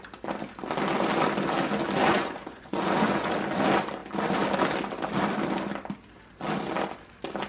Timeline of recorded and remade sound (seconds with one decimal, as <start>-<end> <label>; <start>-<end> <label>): 0.0-2.0 recorded; 2.0-3.3 remade; 3.3-7.5 recorded